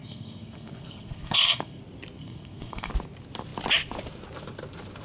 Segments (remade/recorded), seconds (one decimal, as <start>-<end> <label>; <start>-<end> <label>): 0.0-1.8 remade; 1.8-2.2 recorded; 2.2-2.9 remade; 2.9-5.0 recorded